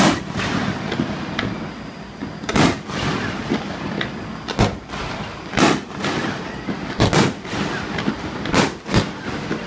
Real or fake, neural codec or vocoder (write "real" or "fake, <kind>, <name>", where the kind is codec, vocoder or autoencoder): real